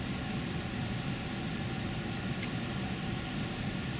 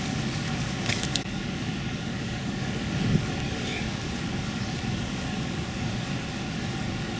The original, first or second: first